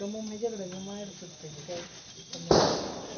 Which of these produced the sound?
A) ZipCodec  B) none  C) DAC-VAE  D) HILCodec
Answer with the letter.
B